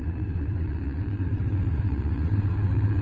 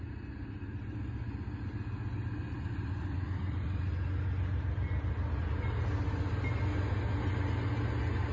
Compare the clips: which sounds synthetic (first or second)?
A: first